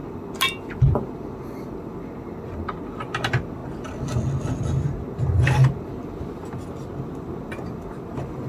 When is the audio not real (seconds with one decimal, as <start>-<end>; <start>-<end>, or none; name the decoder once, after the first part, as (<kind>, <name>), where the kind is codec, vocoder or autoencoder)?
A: none

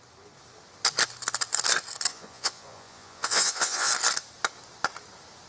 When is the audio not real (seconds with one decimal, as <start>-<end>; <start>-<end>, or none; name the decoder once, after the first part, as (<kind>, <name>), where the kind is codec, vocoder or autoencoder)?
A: 2.1-3.9 (vocoder, Vocos)

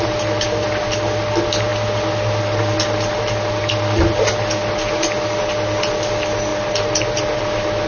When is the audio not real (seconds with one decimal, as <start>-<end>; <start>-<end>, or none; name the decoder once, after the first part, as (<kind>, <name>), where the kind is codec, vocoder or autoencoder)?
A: none

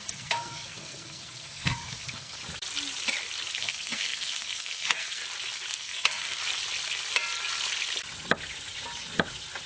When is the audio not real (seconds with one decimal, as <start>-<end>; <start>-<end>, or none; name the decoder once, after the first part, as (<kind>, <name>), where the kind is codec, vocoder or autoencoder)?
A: 0.0-2.4 (codec, SNAC); 3.5-5.2; 5.7-6.4

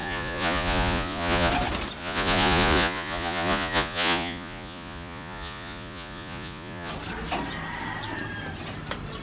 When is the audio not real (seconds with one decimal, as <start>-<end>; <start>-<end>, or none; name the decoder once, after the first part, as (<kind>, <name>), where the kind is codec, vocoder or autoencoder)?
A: 0.0-1.5 (vocoder, Vocos); 2.0-6.9

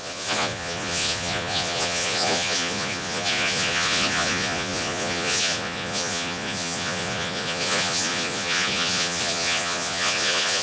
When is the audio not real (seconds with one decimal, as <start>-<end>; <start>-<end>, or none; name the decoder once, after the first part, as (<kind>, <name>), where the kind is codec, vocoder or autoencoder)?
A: 0.0-10.6 (vocoder, Vocos)

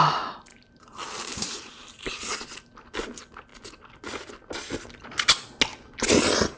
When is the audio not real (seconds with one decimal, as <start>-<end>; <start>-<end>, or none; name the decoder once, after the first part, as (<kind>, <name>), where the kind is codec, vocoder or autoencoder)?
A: 0.5-2.1 (vocoder, BigVGAN v2)